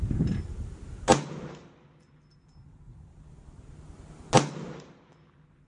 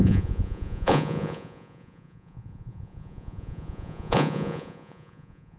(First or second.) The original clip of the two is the first